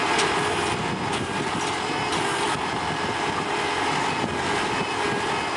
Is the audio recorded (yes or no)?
yes